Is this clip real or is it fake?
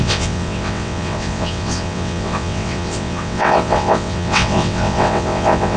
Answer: fake